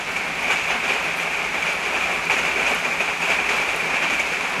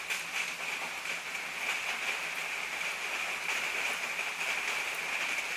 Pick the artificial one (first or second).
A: first